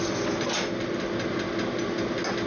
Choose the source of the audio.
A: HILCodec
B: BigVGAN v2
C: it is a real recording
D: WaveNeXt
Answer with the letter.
C